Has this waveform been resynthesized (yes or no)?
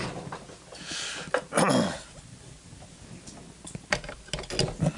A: no